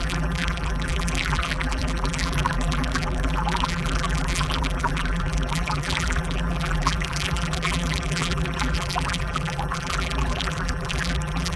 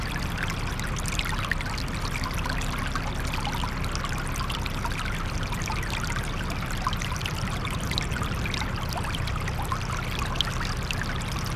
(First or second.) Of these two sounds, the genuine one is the second